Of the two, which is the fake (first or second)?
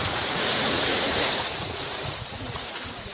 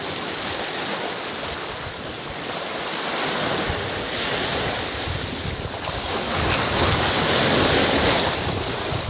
first